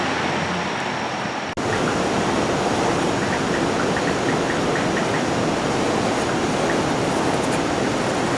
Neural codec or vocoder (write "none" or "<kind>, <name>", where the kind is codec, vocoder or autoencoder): none